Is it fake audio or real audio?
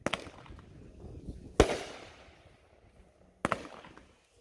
real